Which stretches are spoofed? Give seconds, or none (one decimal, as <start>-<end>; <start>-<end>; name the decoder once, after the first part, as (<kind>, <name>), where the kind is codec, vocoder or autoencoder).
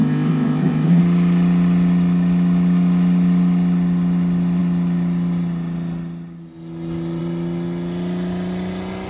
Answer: 0.0-1.0 (codec, ZipCodec)